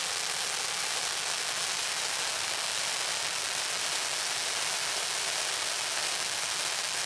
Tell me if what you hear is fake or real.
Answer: real